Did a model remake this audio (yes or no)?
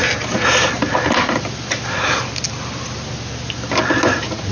no